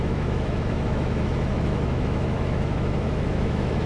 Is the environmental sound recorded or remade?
remade